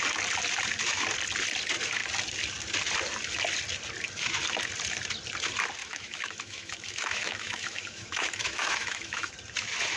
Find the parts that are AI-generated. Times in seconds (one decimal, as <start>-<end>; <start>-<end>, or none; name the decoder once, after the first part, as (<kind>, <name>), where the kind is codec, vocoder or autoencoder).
5.8-9.3 (autoencoder, DAC-VAE)